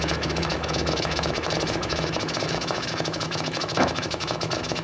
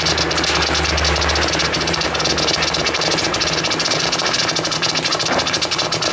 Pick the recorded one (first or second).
second